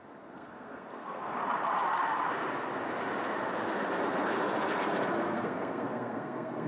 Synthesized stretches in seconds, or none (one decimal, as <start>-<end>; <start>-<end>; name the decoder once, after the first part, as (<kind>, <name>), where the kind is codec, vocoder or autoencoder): 0.0-1.4 (codec, SNAC); 5.1-6.7